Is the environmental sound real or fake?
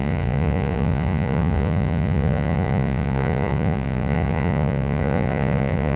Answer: fake